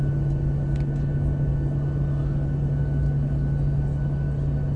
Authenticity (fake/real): real